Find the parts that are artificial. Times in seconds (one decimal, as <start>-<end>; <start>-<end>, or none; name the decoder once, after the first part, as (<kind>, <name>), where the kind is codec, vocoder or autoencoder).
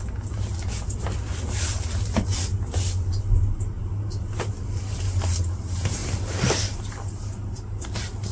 none